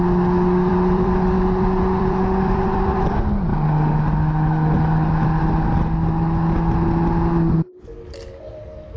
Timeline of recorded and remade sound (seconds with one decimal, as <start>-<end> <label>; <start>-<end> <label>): 0.0-0.7 recorded; 0.7-3.0 remade; 3.0-9.0 recorded